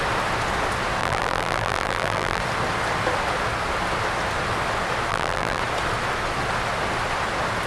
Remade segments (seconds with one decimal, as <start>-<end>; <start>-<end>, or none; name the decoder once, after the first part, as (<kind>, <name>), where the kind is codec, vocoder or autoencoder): 1.0-2.4 (vocoder, BigVGAN v2); 5.1-5.6

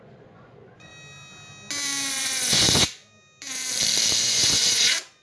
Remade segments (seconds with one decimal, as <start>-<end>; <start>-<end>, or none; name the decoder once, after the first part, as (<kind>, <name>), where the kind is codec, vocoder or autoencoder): 0.0-0.9 (vocoder, Vocos); 2.1-3.0; 4.2-5.2

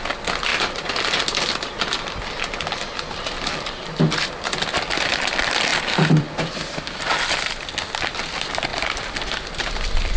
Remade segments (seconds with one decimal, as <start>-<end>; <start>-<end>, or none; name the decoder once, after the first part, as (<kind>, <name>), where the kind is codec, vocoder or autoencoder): 0.5-1.2 (vocoder, BigVGAN v2); 5.7-7.0; 8.7-10.2

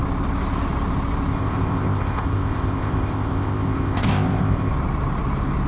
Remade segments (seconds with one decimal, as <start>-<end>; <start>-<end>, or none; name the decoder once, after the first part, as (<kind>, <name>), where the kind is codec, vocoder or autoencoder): 1.3-4.7 (codec, ZipCodec)

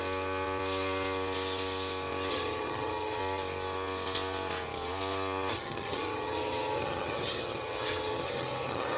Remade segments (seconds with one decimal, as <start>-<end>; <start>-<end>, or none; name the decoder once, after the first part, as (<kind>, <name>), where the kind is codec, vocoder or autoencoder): 2.3-3.2 (vocoder, HiFi-GAN); 5.5-9.0

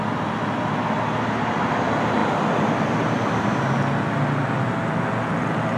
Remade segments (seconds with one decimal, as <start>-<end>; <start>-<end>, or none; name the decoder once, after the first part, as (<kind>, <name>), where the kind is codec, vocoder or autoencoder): none

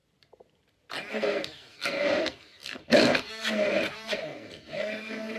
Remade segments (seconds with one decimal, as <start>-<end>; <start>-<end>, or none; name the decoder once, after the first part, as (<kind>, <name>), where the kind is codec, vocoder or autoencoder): 1.1-5.4 (codec, SNAC)

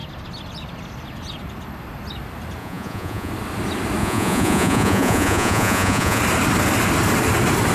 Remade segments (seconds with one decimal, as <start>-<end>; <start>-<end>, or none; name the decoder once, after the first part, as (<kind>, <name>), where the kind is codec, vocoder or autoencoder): 2.6-3.3 (vocoder, Vocos); 4.0-6.2